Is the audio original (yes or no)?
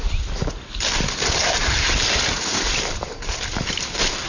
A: yes